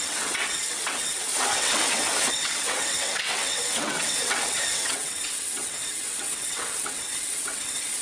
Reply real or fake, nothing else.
fake